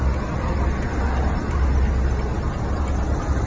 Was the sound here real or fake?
real